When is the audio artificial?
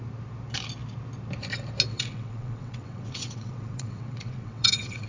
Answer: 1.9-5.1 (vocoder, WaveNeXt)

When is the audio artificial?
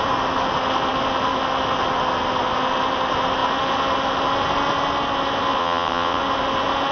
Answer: 5.6-6.2 (vocoder, WaveNeXt)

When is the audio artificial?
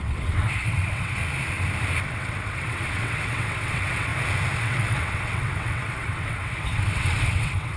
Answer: 0.0-1.2 (vocoder, WaveNeXt); 2.0-4.1; 4.6-7.8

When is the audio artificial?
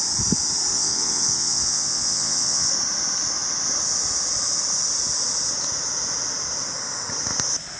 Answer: 0.7-2.7 (vocoder, WaveNeXt)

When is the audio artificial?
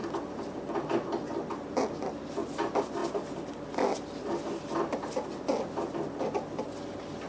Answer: none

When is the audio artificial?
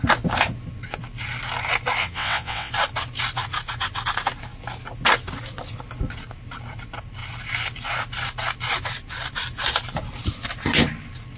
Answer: 2.0-2.7 (vocoder, WaveNeXt)